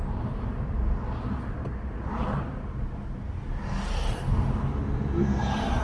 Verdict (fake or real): real